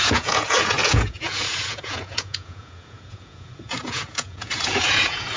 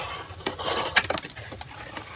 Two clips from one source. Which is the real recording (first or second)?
second